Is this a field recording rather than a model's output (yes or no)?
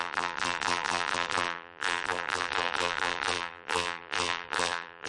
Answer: no